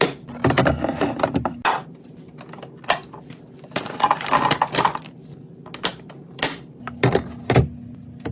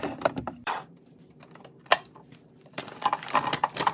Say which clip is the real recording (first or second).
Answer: first